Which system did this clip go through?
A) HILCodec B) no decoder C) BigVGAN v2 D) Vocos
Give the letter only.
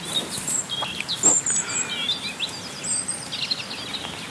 B